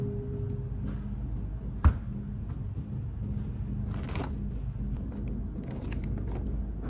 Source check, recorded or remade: recorded